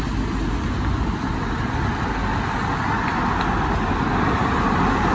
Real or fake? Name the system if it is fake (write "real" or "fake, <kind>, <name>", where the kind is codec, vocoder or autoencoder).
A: real